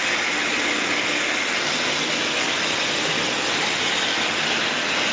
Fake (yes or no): no